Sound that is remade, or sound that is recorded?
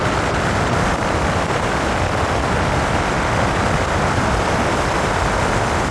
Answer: recorded